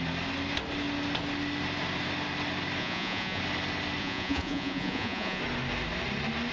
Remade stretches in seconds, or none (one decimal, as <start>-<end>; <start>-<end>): 2.8-3.4; 4.0-5.4

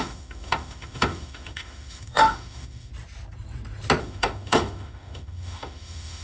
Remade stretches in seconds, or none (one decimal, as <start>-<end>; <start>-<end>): 0.0-2.9; 4.0-6.2

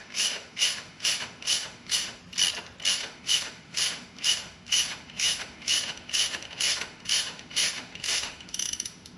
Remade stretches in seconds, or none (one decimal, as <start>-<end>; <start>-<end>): 0.0-2.2; 2.9-9.2

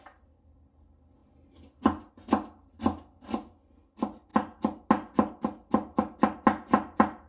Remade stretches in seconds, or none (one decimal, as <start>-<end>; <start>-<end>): none

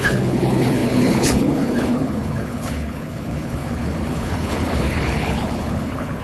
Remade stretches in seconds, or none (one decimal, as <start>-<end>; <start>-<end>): 0.0-6.2

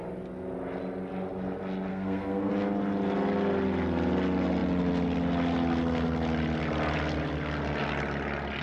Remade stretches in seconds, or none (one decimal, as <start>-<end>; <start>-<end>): 1.9-2.5

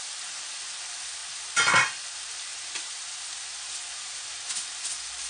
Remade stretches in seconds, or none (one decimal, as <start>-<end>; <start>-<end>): none